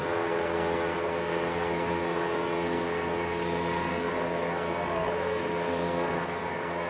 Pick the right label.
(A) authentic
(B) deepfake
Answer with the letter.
B